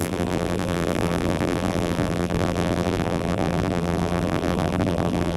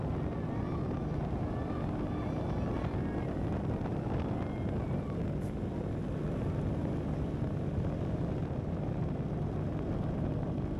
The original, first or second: second